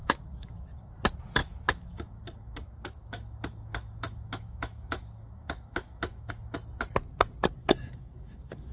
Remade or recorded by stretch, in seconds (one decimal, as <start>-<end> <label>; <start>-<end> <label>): 0.0-0.9 remade; 0.9-1.4 recorded; 1.4-6.3 remade; 6.3-7.6 recorded; 7.6-8.7 remade

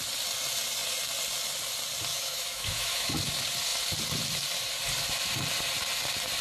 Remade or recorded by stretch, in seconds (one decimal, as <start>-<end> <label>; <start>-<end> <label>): 0.0-2.1 recorded; 2.1-3.1 remade; 3.1-6.4 recorded